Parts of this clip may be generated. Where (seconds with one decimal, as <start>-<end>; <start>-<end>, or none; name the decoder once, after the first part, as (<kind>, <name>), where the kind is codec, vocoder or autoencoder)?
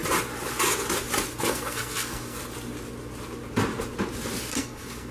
1.4-2.4 (codec, SNAC); 4.4-5.1